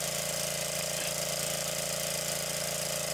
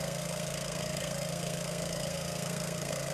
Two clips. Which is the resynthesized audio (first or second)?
second